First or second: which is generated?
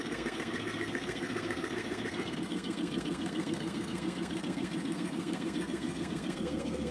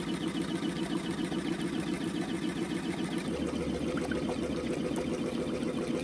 first